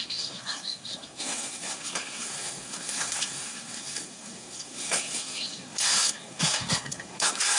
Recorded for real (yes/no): no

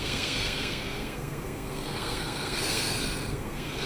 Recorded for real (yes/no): no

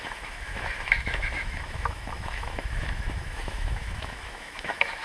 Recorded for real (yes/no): no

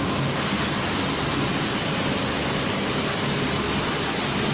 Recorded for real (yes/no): yes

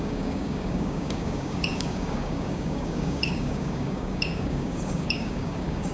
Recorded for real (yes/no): no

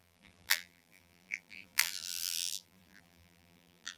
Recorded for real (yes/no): no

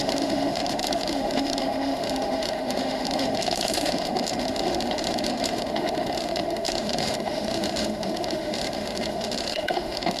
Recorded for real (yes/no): no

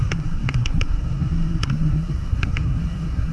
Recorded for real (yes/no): no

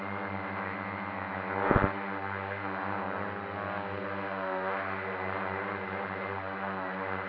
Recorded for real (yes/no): yes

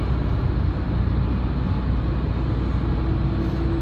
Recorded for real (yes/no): yes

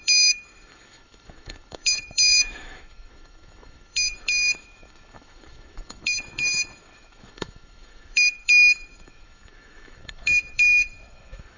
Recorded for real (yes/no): no